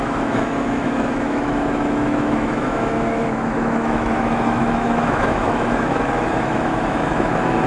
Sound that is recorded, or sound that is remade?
remade